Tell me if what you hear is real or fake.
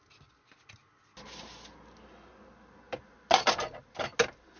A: real